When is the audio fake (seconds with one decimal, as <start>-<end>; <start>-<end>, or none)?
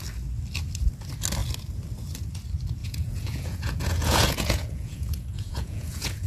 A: 2.8-6.3